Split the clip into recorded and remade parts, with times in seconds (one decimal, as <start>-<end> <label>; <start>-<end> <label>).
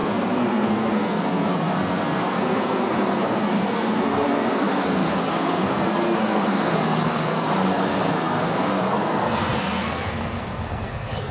0.0-11.3 remade